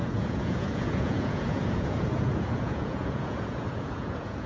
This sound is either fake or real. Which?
fake